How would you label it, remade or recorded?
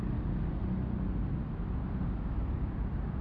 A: recorded